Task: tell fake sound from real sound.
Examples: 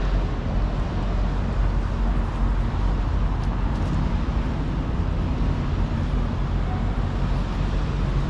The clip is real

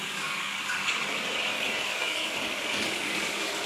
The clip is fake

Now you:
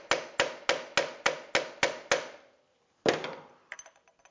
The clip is real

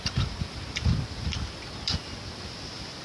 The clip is real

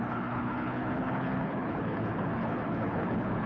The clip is fake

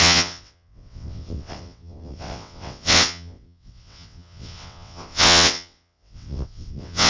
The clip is fake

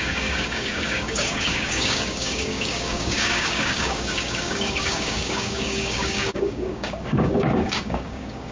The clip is fake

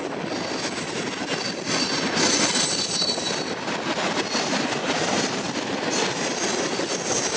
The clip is real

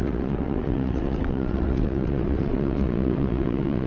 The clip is fake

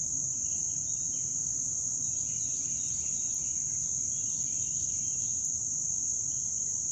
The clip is real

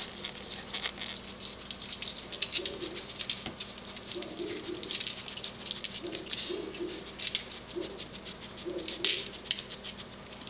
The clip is real